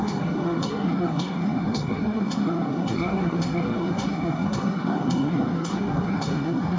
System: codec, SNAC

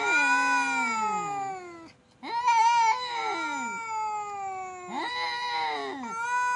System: none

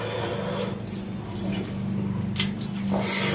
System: none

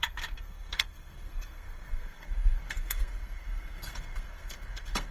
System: codec, SNAC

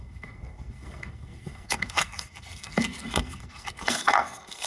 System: codec, SNAC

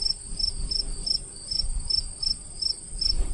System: none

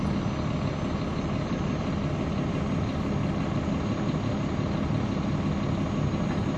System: none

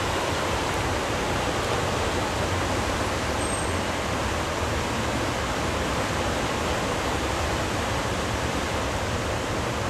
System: none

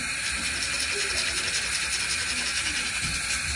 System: none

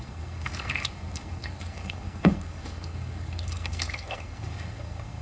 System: codec, SNAC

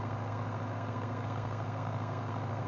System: codec, SNAC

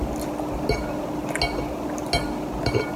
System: none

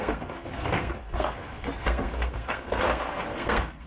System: codec, SNAC